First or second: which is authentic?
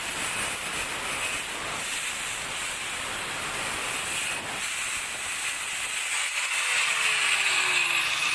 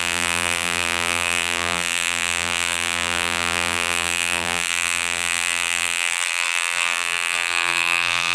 first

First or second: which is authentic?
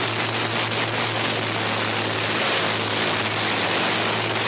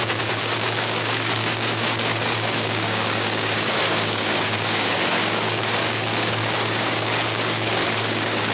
first